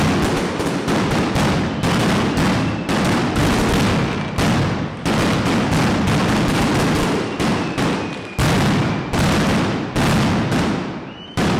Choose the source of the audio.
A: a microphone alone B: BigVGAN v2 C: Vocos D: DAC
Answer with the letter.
A